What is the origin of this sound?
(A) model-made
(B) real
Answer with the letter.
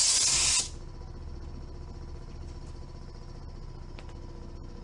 B